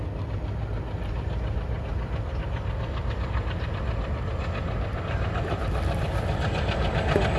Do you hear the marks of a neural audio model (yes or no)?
no